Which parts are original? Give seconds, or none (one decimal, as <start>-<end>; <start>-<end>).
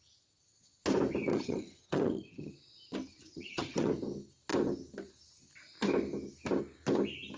0.0-1.3; 2.5-3.3; 3.9-7.4